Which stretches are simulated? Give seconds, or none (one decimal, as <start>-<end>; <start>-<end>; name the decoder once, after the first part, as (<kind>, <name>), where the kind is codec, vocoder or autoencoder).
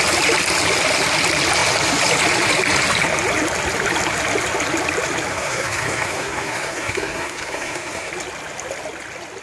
5.3-8.1 (codec, SNAC)